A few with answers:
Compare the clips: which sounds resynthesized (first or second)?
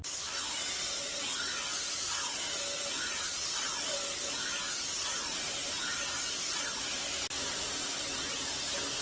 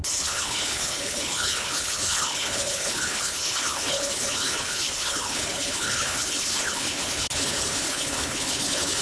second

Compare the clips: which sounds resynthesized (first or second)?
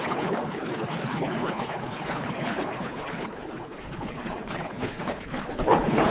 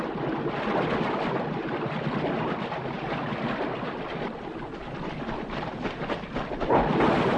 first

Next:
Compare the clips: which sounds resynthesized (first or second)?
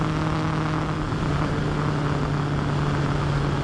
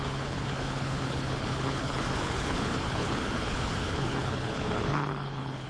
second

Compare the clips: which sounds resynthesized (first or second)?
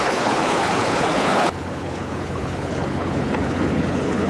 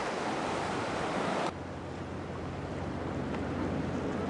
first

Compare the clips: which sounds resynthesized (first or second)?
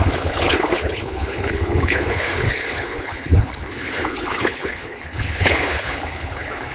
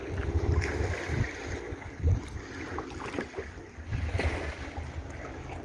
first